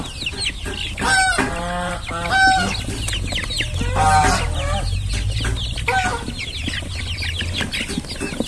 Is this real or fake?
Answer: real